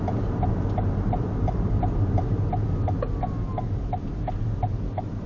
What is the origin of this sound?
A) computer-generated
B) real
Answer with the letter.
B